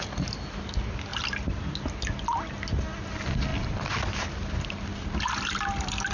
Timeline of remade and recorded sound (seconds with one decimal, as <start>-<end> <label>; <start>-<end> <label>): 0.0-6.1 recorded